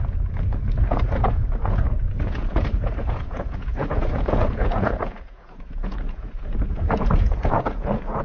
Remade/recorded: remade